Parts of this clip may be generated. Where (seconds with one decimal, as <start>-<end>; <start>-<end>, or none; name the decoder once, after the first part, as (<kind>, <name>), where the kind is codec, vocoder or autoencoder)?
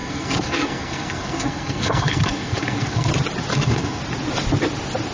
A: 0.0-3.1 (codec, SNAC); 3.5-4.0